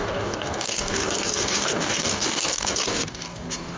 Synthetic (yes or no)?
yes